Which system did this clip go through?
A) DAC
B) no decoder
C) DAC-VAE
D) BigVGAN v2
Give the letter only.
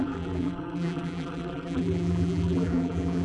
D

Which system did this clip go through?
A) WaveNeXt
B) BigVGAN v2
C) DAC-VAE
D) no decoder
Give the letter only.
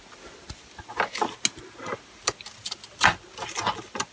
D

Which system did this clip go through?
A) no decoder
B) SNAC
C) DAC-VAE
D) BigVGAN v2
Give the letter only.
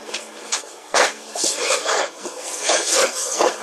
B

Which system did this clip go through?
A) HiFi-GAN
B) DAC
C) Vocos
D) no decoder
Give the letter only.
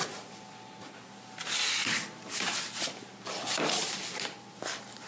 D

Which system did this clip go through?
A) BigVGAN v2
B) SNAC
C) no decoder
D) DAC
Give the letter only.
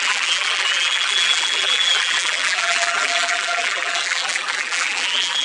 A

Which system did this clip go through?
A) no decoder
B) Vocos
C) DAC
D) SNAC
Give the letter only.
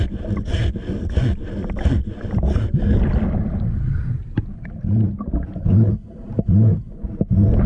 A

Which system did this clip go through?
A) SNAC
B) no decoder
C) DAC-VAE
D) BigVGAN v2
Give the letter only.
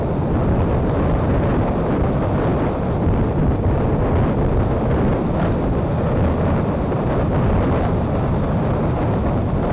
B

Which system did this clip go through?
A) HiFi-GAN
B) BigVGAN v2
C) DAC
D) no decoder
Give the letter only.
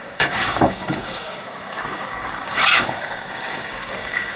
C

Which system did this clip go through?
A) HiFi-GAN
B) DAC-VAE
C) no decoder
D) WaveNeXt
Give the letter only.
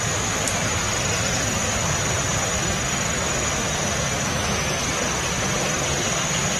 C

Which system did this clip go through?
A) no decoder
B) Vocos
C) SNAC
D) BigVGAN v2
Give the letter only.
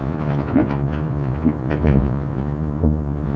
B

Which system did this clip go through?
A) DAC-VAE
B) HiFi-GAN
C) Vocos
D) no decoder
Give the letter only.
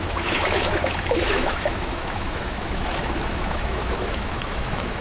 A